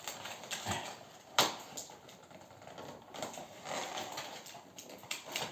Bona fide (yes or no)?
yes